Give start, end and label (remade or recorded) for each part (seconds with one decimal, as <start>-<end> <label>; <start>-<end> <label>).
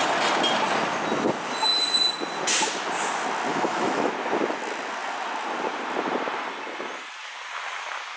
0.0-3.5 recorded; 3.5-4.1 remade; 4.1-8.2 recorded